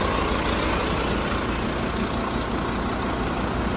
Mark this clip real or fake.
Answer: real